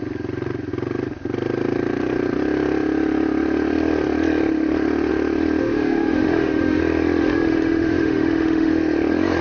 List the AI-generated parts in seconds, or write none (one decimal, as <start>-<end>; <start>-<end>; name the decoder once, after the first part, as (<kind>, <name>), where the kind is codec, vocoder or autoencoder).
5.6-6.8 (autoencoder, DAC-VAE); 7.2-8.7